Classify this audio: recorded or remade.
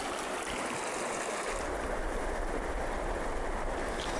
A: recorded